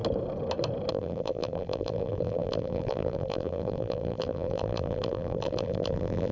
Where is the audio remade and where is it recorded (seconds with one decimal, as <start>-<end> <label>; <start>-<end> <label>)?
0.0-0.9 recorded; 0.9-6.3 remade